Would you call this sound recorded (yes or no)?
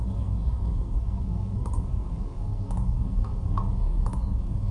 no